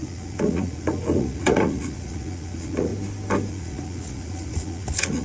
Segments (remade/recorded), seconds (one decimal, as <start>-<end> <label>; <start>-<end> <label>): 0.0-2.9 remade; 2.9-3.5 recorded; 3.5-5.2 remade